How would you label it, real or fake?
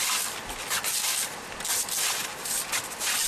real